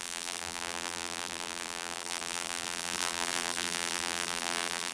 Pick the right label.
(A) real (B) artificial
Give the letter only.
B